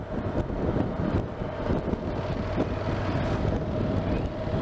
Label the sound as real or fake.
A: real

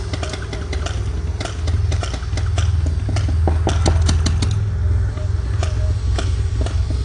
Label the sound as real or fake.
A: real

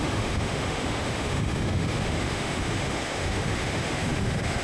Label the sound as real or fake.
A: fake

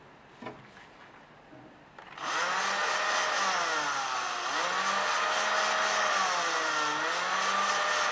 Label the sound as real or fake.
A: real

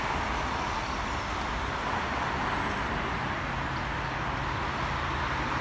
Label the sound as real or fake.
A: real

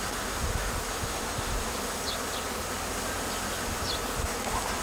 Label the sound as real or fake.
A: real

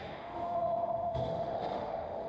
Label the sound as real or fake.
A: fake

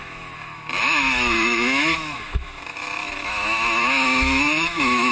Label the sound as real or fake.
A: fake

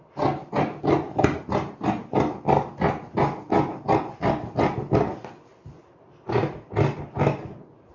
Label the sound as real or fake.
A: real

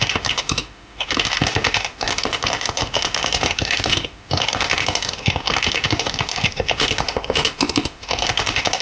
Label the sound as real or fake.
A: fake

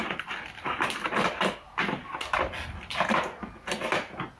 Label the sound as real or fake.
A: real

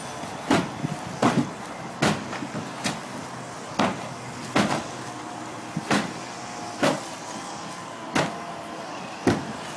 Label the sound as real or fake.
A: real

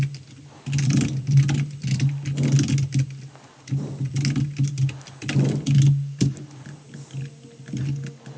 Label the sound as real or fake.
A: real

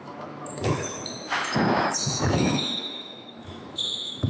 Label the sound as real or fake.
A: fake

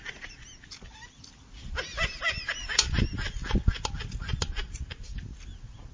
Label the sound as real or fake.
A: real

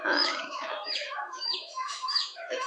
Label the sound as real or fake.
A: fake